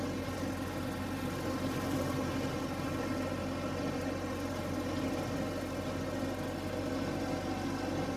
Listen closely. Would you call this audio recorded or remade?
recorded